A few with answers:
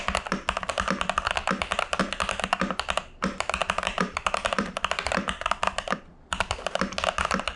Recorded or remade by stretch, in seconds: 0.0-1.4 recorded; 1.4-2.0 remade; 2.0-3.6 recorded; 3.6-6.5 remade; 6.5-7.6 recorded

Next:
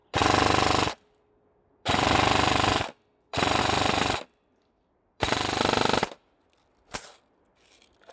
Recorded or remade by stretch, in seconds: 0.0-8.1 recorded

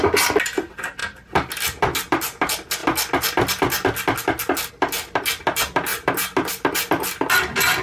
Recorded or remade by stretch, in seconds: 0.0-7.8 recorded

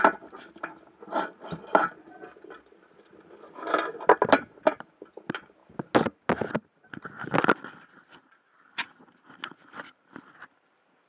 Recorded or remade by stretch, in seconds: 0.0-5.6 remade; 5.6-7.9 recorded; 7.9-11.1 remade

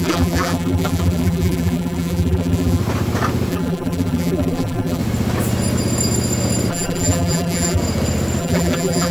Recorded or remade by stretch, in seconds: 0.0-2.8 remade; 2.8-3.5 recorded; 3.5-5.0 remade; 5.0-6.7 recorded; 6.7-7.8 remade; 7.8-8.4 recorded; 8.4-9.1 remade

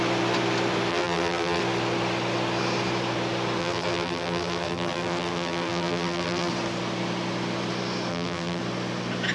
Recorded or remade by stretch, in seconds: 0.0-0.9 recorded; 0.9-1.6 remade; 1.6-3.6 recorded; 3.6-6.5 remade; 6.5-8.1 recorded; 8.1-8.6 remade; 8.6-9.3 recorded